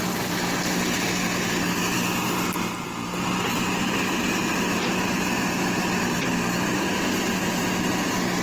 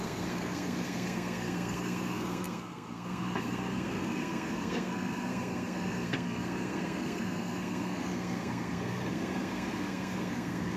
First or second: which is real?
first